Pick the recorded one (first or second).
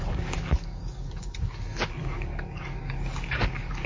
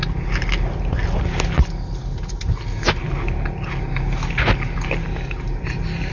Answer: second